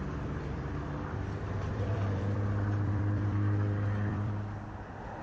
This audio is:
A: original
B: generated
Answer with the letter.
B